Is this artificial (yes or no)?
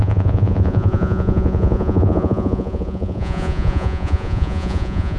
yes